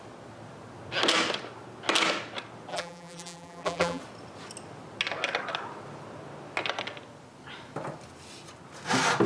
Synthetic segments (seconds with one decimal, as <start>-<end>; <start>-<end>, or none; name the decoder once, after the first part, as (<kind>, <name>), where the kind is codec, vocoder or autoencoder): 2.7-4.0 (vocoder, BigVGAN v2)